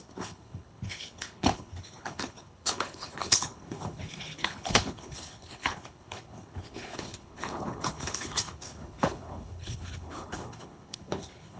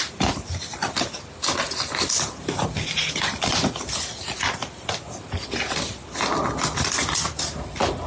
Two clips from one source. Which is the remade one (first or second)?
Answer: first